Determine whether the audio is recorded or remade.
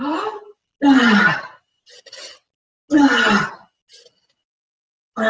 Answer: recorded